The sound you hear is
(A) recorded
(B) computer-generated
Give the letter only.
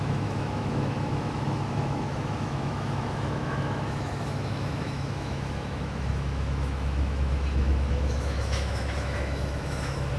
B